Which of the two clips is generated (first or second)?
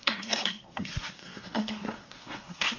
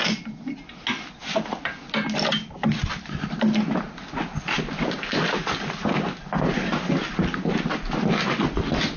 first